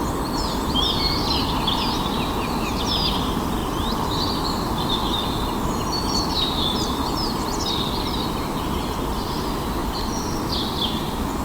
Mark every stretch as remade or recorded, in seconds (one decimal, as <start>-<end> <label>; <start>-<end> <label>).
0.0-3.6 recorded; 3.6-4.3 remade; 4.3-9.8 recorded; 9.8-10.4 remade; 10.4-11.4 recorded